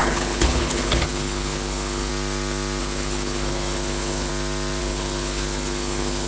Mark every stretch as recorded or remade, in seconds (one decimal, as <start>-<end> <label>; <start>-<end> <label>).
0.0-2.1 remade; 2.1-2.8 recorded; 2.8-4.3 remade; 4.3-4.8 recorded; 4.8-6.3 remade